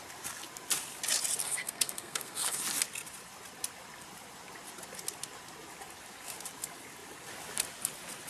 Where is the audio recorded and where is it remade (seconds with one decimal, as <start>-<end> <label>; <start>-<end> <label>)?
0.0-1.4 recorded; 1.4-2.6 remade; 2.6-8.3 recorded